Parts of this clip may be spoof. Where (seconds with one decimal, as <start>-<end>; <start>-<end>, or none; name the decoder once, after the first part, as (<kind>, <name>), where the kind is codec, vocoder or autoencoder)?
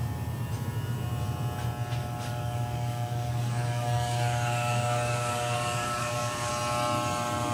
2.0-6.5 (codec, DAC)